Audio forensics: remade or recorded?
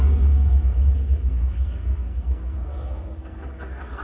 remade